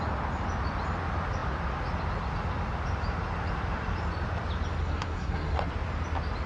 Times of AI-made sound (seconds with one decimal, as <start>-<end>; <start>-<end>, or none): 4.8-5.7